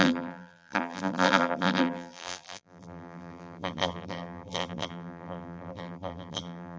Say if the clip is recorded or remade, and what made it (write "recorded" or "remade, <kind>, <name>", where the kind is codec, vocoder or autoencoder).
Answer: remade, vocoder, BigVGAN v2